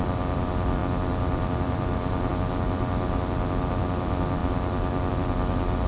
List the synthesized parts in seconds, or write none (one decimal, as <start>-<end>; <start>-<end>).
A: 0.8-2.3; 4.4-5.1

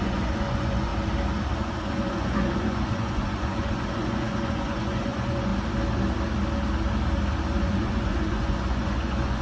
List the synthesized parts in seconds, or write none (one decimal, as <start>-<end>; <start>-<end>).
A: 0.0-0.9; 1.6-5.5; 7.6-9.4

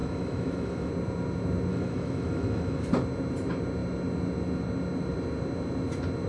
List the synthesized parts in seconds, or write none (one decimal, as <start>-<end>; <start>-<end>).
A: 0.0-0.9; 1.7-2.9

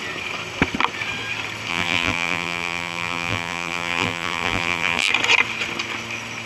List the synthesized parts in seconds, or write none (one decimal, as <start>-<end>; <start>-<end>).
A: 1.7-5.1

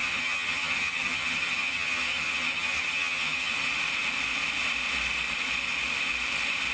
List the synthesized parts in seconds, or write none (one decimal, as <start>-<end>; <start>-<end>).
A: 0.0-3.5

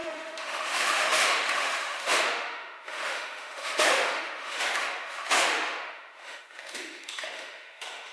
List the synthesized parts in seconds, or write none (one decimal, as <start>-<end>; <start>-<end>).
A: 0.0-8.1